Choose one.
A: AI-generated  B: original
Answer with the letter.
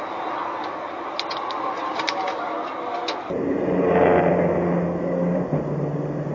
B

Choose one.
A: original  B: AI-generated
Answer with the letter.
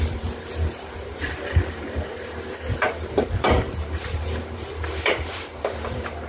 B